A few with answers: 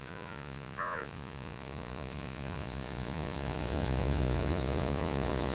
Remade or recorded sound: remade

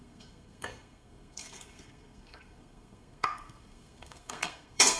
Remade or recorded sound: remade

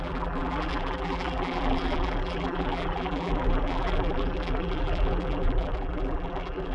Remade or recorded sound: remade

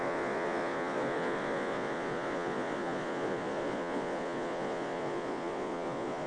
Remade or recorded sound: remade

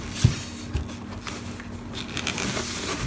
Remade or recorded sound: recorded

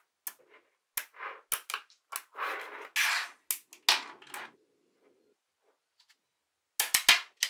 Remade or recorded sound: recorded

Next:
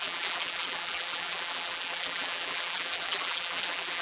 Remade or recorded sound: remade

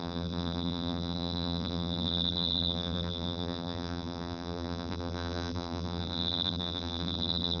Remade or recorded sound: remade